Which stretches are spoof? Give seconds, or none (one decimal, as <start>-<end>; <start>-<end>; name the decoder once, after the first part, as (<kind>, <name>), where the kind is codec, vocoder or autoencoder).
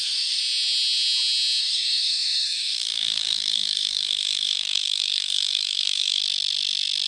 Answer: 0.0-0.4 (codec, DAC); 1.6-6.2